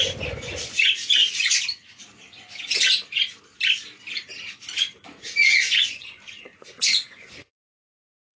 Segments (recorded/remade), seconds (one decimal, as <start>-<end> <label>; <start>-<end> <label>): 0.0-1.2 remade; 1.2-5.2 recorded; 5.2-8.4 remade